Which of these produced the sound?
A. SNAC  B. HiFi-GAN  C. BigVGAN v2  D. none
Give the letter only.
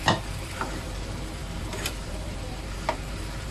C